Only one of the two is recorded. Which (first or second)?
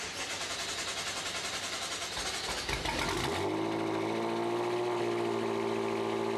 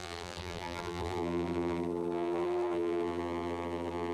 first